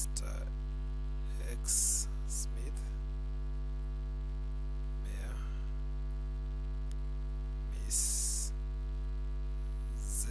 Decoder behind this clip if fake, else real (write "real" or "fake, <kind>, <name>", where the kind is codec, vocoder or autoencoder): real